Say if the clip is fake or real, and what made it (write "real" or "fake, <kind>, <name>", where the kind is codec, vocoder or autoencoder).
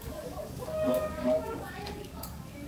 fake, codec, DAC